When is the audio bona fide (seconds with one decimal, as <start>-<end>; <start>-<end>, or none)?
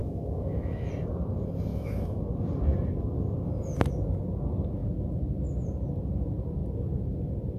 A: 0.9-1.7; 2.2-7.6